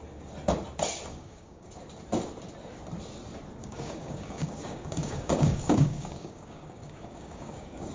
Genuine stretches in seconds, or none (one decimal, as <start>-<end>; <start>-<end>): 0.0-1.1; 1.7-3.6